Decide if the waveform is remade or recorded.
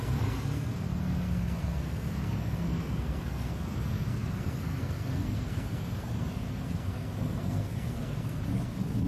remade